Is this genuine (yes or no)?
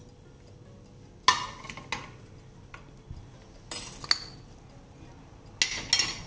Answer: yes